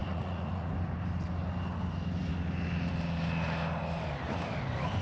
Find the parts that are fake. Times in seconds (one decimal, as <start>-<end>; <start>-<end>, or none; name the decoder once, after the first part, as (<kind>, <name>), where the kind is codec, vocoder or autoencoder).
0.0-0.7 (vocoder, Vocos)